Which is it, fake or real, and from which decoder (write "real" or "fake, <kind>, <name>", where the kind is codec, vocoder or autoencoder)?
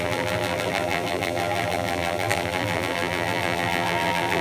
fake, vocoder, BigVGAN v2